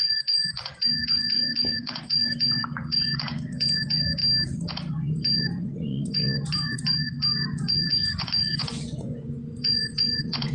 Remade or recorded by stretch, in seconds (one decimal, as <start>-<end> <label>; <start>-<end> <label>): 0.0-4.2 remade; 4.2-4.9 recorded; 4.9-10.5 remade